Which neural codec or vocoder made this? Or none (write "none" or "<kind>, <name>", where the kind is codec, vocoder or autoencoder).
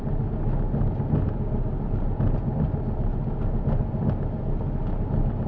none